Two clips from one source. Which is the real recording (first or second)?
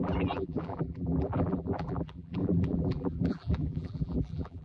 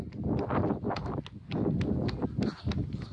second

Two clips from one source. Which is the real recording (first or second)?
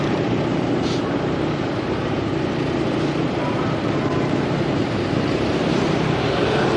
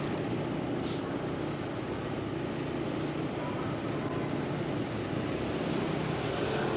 second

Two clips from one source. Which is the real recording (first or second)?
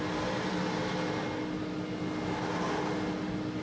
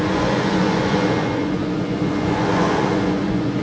first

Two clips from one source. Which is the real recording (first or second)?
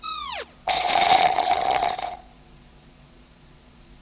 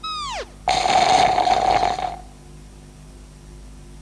second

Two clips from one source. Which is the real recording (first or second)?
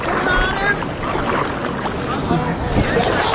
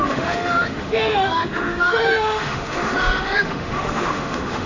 first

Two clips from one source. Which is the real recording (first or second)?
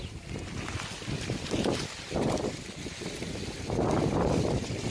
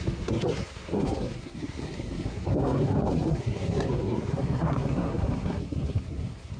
first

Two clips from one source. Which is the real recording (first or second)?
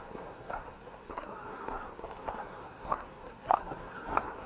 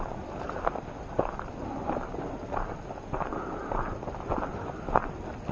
second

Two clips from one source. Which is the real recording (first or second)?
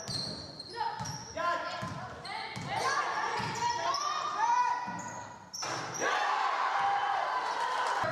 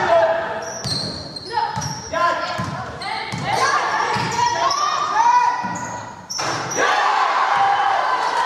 first